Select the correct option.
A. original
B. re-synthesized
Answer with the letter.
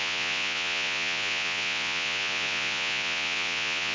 B